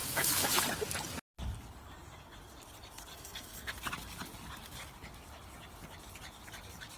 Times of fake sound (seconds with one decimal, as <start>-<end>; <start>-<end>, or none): 3.1-3.7